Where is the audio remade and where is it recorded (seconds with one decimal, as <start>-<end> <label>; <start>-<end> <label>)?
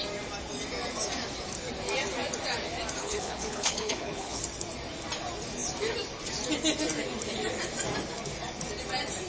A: 0.0-3.0 recorded; 3.0-4.4 remade; 4.4-9.3 recorded